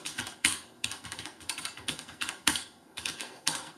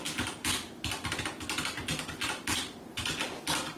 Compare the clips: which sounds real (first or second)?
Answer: second